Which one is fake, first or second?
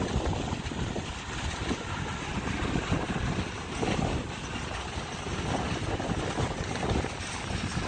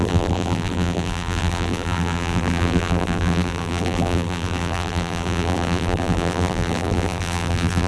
second